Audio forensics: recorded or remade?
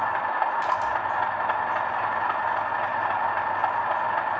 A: recorded